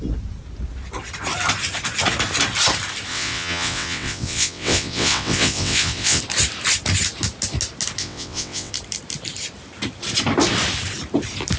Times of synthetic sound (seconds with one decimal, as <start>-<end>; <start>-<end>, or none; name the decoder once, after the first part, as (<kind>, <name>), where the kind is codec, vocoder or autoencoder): 3.1-6.2 (vocoder, WaveNeXt); 8.0-8.7